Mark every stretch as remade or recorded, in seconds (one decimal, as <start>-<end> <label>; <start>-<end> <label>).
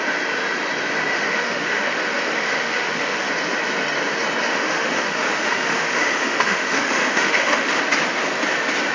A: 0.0-1.1 recorded; 1.1-3.3 remade; 3.3-4.5 recorded; 4.5-7.8 remade; 7.8-8.9 recorded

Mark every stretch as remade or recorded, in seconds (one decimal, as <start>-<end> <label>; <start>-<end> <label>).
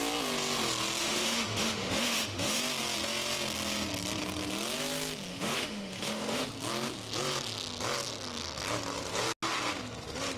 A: 0.0-1.0 recorded; 1.0-2.6 remade; 2.6-5.3 recorded; 5.3-6.5 remade; 6.5-10.4 recorded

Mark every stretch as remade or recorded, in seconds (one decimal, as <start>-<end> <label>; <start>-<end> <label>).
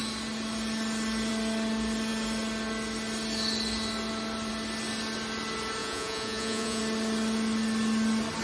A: 0.0-5.8 recorded; 5.8-6.8 remade; 6.8-8.4 recorded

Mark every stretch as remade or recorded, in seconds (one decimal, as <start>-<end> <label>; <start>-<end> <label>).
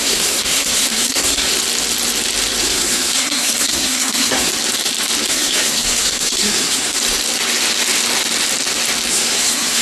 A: 0.0-1.5 remade; 1.5-2.6 recorded; 2.6-4.5 remade; 4.5-5.3 recorded; 5.3-7.0 remade; 7.0-9.1 recorded; 9.1-9.8 remade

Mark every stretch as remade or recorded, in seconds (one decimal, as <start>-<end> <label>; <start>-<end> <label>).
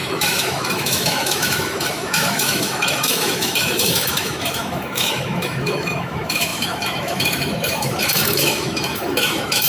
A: 0.0-9.7 remade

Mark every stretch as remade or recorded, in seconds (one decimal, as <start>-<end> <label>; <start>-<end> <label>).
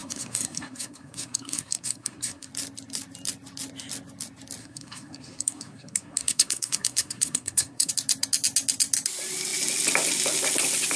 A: 0.0-2.5 remade; 2.5-4.6 recorded; 4.6-7.9 remade; 7.9-11.0 recorded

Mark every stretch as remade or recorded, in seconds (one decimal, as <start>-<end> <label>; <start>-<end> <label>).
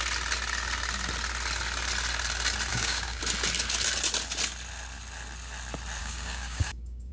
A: 0.0-2.7 recorded; 2.7-3.2 remade; 3.2-6.0 recorded; 6.0-7.1 remade